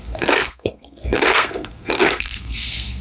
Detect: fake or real fake